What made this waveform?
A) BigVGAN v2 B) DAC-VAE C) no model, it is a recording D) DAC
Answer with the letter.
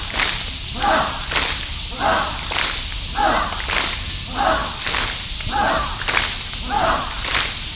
C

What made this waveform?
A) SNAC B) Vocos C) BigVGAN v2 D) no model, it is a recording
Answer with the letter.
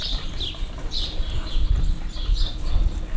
D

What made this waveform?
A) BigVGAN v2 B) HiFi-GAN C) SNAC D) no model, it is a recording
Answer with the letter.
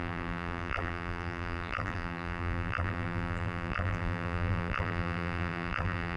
A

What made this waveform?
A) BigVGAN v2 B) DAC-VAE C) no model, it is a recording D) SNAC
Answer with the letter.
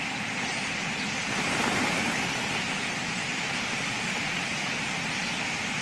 A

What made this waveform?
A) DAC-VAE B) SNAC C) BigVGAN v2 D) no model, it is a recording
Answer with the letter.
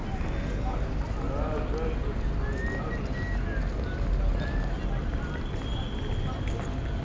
D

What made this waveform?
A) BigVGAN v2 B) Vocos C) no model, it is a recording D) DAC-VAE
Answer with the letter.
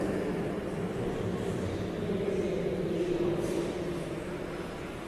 A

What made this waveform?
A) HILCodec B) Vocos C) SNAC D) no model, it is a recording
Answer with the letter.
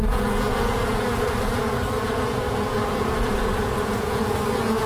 B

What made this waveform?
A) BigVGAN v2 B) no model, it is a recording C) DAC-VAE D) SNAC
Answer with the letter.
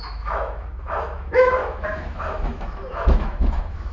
C